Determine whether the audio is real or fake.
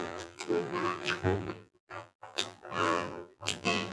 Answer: fake